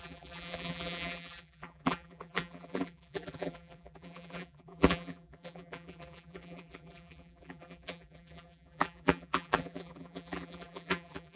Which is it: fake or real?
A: fake